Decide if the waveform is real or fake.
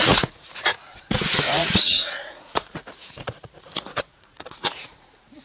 fake